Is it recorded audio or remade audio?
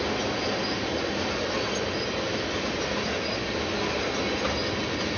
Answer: recorded